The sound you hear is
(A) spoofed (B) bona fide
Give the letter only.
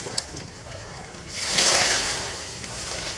A